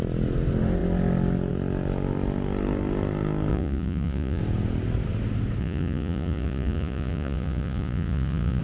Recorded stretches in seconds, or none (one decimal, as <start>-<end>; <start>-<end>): 0.0-3.5; 4.4-5.6